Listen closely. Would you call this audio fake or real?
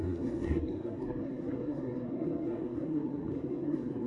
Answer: fake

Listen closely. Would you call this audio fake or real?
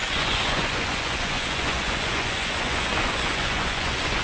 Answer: fake